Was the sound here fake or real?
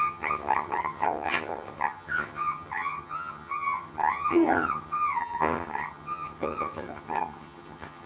fake